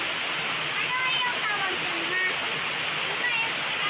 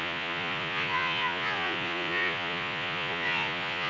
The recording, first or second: first